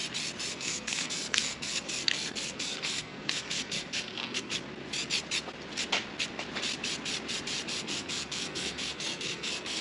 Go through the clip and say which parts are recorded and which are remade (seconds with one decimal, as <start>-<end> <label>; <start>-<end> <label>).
0.0-0.5 recorded; 0.5-4.5 remade; 4.5-7.8 recorded; 7.8-9.8 remade